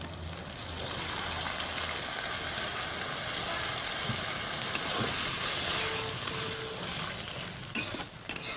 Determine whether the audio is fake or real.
real